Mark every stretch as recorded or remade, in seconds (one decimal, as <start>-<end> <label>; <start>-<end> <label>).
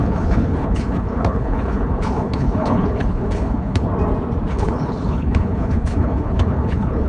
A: 0.0-3.9 remade; 3.9-4.5 recorded; 4.5-7.1 remade